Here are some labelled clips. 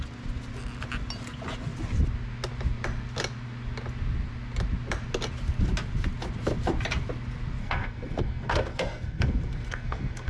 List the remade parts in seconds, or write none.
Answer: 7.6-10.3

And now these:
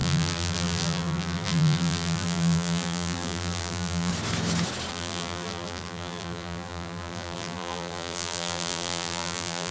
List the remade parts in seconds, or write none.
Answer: 0.0-4.1; 4.9-9.7